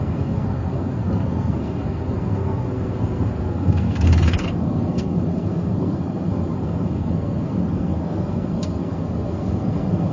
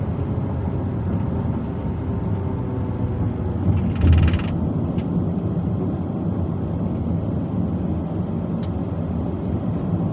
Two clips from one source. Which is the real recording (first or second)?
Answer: second